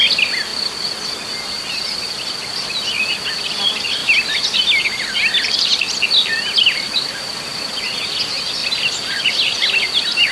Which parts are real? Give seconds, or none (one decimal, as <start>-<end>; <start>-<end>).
0.0-10.3